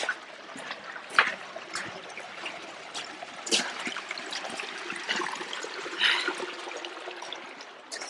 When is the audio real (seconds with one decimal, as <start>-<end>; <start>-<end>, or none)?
0.0-1.3; 6.0-8.1